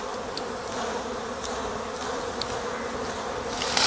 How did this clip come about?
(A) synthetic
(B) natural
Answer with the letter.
B